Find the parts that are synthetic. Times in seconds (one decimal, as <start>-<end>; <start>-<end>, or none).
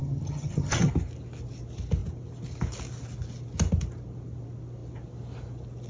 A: 0.0-0.9